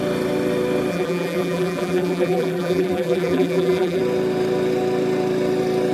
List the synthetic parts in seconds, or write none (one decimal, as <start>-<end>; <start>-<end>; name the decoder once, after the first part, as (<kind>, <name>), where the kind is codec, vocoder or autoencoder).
0.9-4.0 (vocoder, BigVGAN v2)